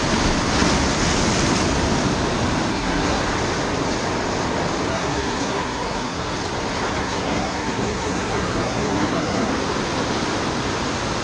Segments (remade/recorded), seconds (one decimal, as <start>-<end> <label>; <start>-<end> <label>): 0.0-2.7 recorded; 2.7-3.2 remade; 3.2-4.9 recorded; 4.9-6.3 remade; 6.3-7.0 recorded; 7.0-9.5 remade; 9.5-11.2 recorded